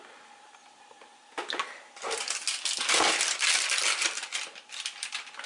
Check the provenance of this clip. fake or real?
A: real